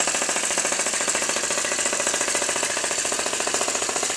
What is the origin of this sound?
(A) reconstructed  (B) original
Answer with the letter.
B